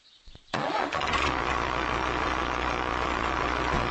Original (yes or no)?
no